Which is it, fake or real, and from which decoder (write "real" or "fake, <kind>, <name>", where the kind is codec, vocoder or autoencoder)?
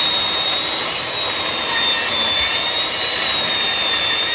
real